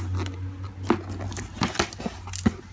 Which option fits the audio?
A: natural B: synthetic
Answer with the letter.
A